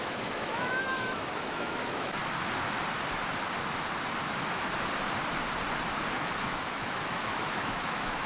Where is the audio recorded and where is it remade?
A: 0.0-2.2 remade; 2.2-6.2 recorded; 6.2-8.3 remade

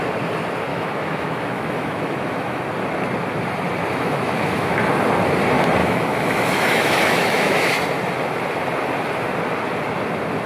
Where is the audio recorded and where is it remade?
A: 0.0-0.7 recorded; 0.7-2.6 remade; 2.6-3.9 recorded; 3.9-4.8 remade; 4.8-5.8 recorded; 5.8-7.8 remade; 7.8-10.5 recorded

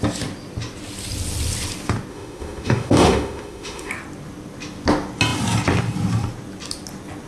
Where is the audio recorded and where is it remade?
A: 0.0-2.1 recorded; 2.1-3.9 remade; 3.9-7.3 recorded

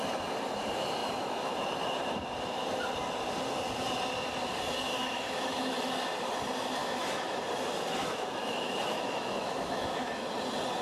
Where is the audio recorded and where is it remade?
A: 0.0-1.0 recorded; 1.0-1.5 remade; 1.5-4.9 recorded; 4.9-5.9 remade; 5.9-6.8 recorded; 6.8-7.4 remade; 7.4-8.0 recorded; 8.0-10.3 remade; 10.3-10.8 recorded

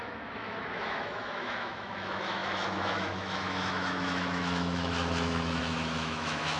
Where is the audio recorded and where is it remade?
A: 0.0-6.6 remade

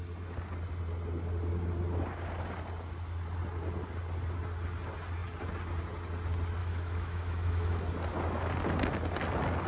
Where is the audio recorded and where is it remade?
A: 0.0-6.6 recorded; 6.6-7.8 remade; 7.8-9.7 recorded

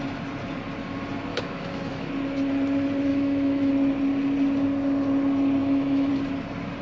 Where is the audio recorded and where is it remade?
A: 0.0-1.3 recorded; 1.3-2.1 remade; 2.1-3.1 recorded; 3.1-3.7 remade; 3.7-5.6 recorded; 5.6-6.1 remade; 6.1-6.8 recorded

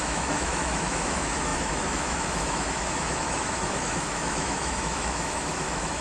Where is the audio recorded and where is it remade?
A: 0.0-6.0 remade